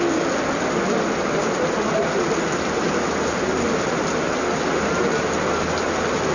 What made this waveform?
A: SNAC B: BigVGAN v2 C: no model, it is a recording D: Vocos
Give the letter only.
C